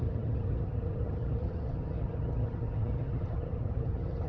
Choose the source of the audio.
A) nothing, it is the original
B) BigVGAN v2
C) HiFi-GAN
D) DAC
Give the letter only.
C